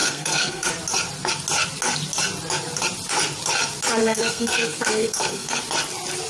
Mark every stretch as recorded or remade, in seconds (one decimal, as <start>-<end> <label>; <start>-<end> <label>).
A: 0.0-0.7 remade; 0.7-4.0 recorded; 4.0-5.6 remade; 5.6-6.3 recorded

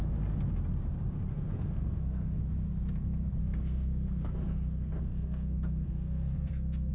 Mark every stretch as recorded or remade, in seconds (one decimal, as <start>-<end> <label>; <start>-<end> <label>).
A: 0.0-1.3 recorded; 1.3-2.4 remade; 2.4-3.4 recorded; 3.4-6.9 remade

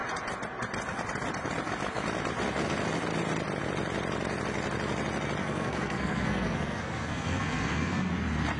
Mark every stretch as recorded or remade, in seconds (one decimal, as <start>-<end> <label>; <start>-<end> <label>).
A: 0.0-5.4 recorded; 5.4-8.1 remade; 8.1-8.6 recorded

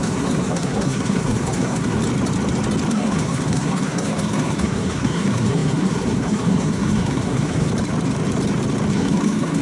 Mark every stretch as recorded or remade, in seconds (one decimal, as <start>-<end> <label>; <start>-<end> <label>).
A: 0.0-2.0 remade; 2.0-2.9 recorded; 2.9-7.7 remade; 7.7-8.9 recorded; 8.9-9.6 remade

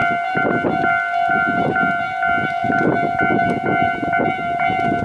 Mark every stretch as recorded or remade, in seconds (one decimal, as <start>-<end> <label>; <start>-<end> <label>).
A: 0.0-5.0 recorded

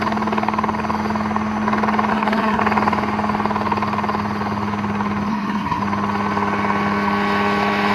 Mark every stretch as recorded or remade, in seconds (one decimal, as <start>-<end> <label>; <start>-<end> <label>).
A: 0.0-2.1 recorded; 2.1-2.6 remade; 2.6-5.3 recorded; 5.3-5.8 remade; 5.8-7.9 recorded

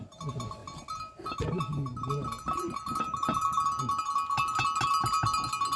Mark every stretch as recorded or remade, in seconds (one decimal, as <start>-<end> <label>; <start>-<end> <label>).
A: 0.0-5.8 recorded

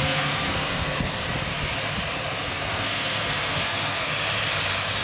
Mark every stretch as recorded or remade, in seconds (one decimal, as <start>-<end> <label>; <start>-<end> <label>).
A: 0.0-1.2 remade; 1.2-2.5 recorded; 2.5-4.1 remade; 4.1-5.0 recorded